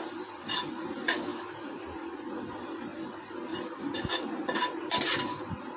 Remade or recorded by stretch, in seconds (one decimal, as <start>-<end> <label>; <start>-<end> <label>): 0.0-5.8 recorded

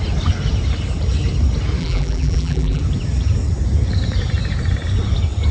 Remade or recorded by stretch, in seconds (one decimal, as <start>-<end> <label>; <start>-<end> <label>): 0.0-1.8 recorded; 1.8-2.8 remade; 2.8-5.5 recorded

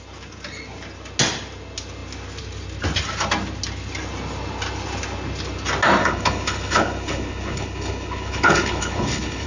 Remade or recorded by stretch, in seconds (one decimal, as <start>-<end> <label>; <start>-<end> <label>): 0.0-6.0 recorded; 6.0-9.5 remade